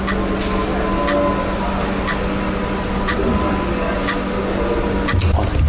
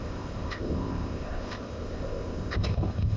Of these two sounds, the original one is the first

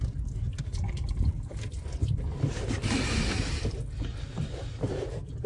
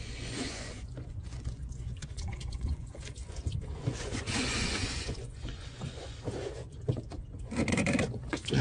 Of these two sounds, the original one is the first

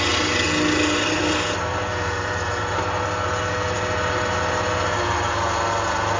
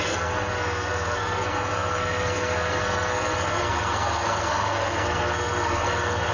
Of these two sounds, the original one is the first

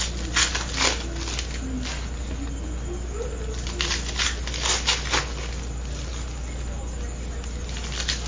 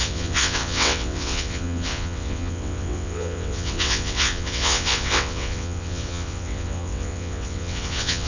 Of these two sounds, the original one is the first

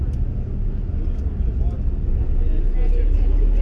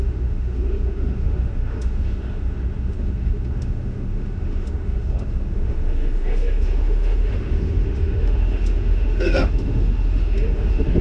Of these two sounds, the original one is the first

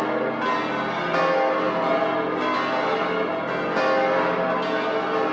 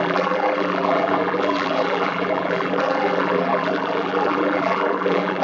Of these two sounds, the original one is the first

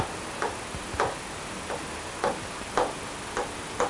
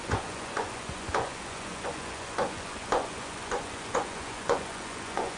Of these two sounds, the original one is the first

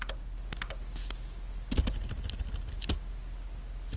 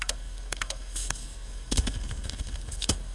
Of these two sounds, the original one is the first